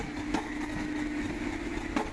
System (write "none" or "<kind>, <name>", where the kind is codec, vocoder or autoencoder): none